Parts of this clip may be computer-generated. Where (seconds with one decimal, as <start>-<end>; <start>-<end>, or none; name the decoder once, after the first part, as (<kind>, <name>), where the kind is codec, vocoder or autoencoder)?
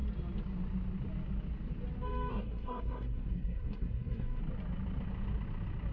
2.3-4.4 (codec, SNAC)